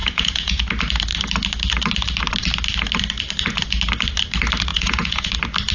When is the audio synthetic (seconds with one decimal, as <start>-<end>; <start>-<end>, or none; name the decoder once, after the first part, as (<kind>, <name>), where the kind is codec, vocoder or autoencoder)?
0.0-0.6 (vocoder, Vocos); 4.7-5.3